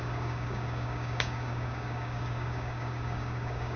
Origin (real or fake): fake